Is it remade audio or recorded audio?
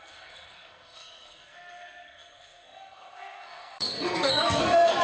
remade